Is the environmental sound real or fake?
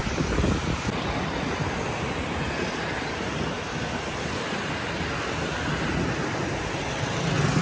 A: real